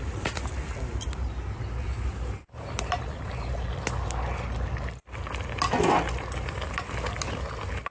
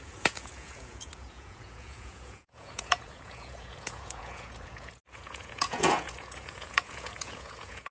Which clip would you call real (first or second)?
first